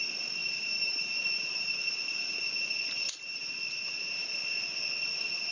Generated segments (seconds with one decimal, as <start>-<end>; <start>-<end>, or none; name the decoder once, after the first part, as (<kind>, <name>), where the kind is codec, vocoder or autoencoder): 0.4-2.5 (vocoder, BigVGAN v2); 3.3-4.3